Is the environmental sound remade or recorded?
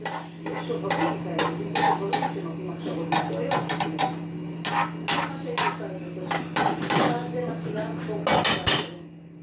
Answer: recorded